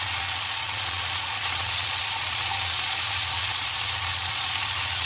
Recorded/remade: remade